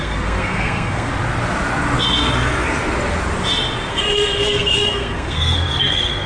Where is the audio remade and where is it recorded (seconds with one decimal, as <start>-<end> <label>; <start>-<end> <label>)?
0.0-1.1 remade; 1.1-3.9 recorded; 3.9-6.3 remade